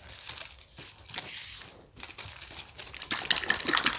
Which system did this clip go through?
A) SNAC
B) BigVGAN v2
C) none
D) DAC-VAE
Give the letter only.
C